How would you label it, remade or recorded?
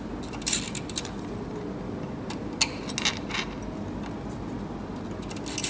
recorded